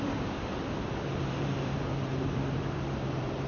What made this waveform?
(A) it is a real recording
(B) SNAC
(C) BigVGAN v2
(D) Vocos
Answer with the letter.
C